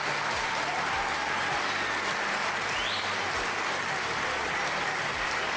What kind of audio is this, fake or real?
real